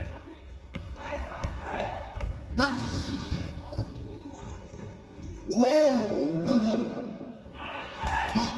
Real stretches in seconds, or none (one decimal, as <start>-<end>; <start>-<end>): none